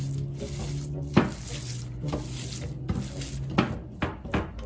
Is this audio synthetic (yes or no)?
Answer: no